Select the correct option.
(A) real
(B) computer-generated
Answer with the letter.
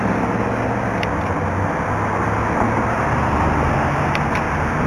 A